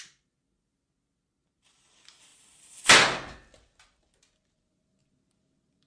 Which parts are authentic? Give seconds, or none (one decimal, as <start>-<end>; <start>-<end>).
0.0-5.9